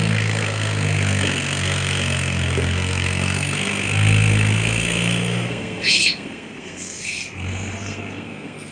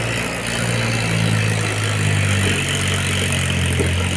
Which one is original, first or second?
second